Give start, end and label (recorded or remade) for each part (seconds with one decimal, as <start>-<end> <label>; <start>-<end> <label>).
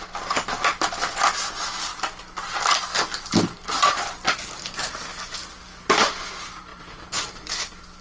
0.0-6.7 recorded; 6.7-7.5 remade; 7.5-8.0 recorded